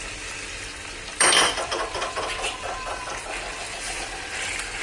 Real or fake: fake